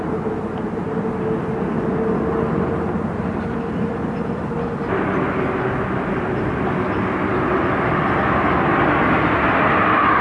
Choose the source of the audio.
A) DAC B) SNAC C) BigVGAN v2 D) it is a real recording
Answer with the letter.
D